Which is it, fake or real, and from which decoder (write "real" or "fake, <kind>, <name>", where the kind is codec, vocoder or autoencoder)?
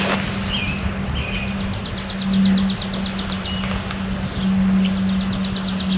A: real